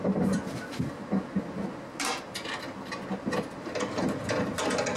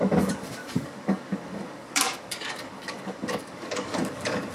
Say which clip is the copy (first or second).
second